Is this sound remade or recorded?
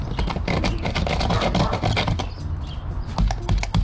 recorded